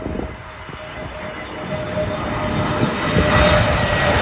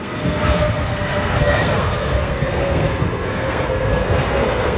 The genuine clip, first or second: first